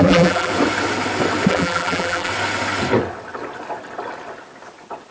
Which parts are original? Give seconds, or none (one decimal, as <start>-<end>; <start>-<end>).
0.5-1.5; 2.3-5.1